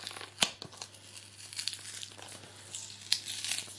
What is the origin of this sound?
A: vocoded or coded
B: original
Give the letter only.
B